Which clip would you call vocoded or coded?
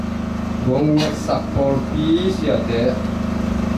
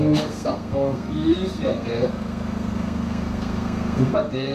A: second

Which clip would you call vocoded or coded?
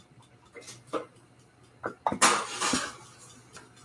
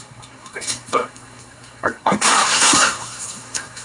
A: second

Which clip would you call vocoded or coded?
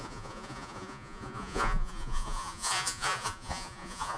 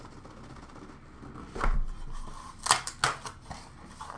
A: first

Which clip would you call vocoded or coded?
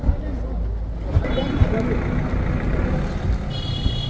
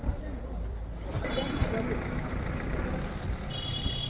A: second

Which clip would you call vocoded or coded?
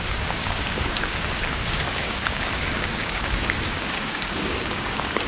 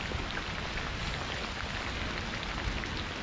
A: first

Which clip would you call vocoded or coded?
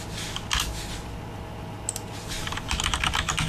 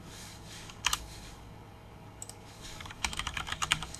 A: second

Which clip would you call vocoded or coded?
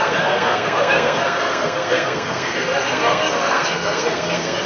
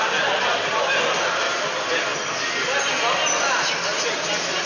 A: first